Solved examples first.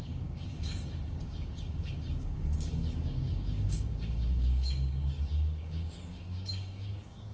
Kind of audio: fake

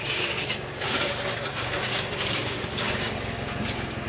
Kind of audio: fake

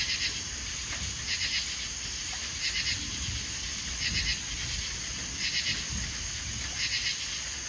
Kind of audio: real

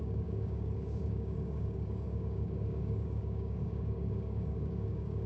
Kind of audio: fake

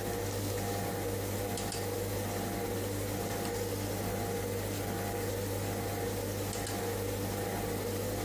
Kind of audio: real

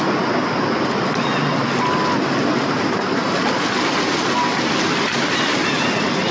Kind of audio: real